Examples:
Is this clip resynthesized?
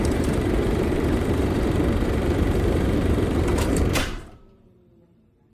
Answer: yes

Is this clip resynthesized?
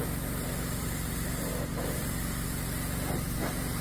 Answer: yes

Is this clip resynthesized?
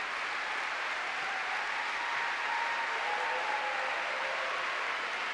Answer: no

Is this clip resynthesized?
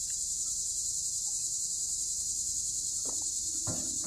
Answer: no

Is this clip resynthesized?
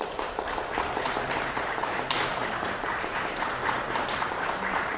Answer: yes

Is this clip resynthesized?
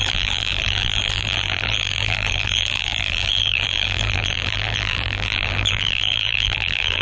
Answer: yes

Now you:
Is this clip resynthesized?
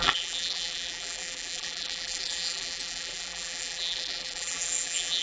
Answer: yes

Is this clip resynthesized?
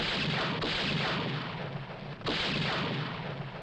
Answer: no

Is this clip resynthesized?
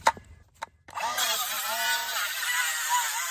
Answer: yes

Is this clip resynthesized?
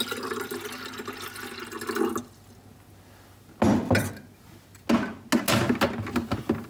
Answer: no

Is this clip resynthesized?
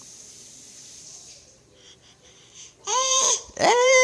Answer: yes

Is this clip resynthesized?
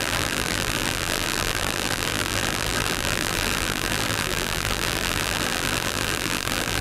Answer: yes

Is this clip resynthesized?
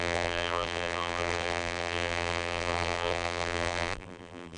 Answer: yes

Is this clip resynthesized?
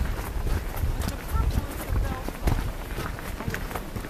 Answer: no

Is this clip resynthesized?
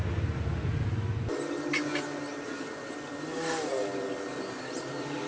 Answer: no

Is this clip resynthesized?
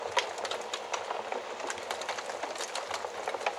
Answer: no